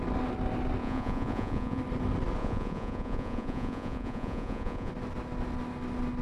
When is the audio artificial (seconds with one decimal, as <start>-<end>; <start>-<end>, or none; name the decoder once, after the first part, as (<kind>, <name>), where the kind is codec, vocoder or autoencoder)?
0.8-1.8 (vocoder, Vocos); 2.4-4.9